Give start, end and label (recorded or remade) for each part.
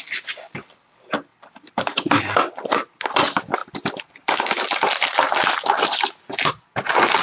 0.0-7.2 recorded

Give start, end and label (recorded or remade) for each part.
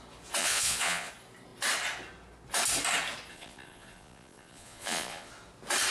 0.0-0.4 recorded; 0.4-1.1 remade; 1.1-3.3 recorded; 3.3-5.3 remade; 5.3-5.9 recorded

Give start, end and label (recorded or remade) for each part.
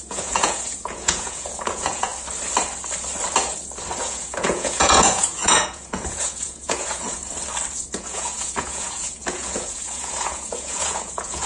0.0-2.1 remade; 2.1-4.0 recorded; 4.0-7.2 remade; 7.2-7.9 recorded; 7.9-11.5 remade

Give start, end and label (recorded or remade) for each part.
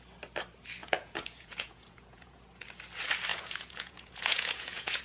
0.0-0.8 recorded; 0.8-2.4 remade; 2.4-3.3 recorded; 3.3-5.0 remade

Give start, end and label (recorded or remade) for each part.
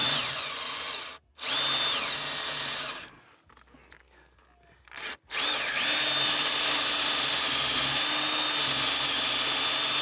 0.0-0.6 remade; 0.6-10.0 recorded